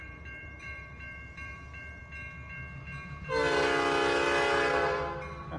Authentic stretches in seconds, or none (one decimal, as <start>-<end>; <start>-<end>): 2.0-5.6